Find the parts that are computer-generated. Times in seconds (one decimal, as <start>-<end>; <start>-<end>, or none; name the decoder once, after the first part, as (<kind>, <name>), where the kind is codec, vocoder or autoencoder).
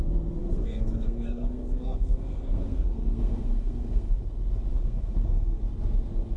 0.4-4.2 (codec, SNAC); 4.7-5.6